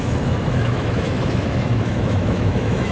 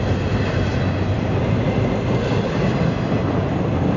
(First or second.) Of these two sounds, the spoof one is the first